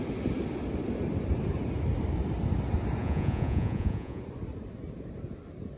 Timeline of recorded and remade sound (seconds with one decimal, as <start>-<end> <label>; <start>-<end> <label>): 0.0-3.0 recorded; 3.0-4.2 remade; 4.2-5.8 recorded